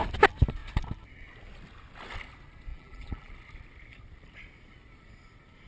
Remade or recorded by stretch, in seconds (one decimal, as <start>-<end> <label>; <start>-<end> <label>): 0.0-2.7 recorded; 2.7-3.3 remade; 3.3-5.7 recorded